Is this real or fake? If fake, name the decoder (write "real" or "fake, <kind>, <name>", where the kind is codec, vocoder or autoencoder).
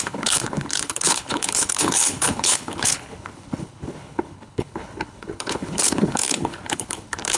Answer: fake, codec, HILCodec